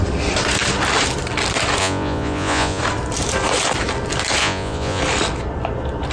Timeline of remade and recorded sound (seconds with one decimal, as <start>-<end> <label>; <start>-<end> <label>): 0.0-1.8 recorded; 1.8-2.8 remade; 2.8-4.4 recorded; 4.4-5.0 remade; 5.0-6.1 recorded